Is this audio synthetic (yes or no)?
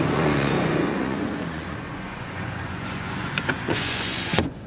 yes